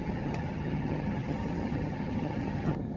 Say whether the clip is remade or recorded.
remade